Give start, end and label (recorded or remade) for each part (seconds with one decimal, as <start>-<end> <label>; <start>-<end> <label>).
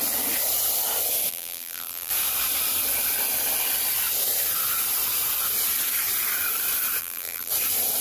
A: 0.0-1.3 recorded; 1.3-2.1 remade; 2.1-7.0 recorded; 7.0-7.5 remade; 7.5-8.0 recorded